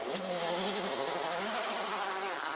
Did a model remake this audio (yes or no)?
no